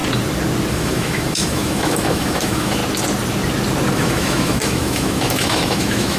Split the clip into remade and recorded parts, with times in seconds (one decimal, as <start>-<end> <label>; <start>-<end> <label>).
0.0-0.7 recorded; 0.7-2.8 remade; 2.8-3.9 recorded; 3.9-6.2 remade